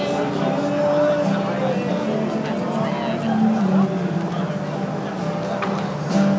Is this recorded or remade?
recorded